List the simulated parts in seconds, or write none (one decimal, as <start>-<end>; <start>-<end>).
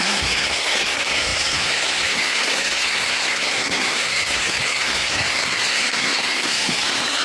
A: 0.0-7.2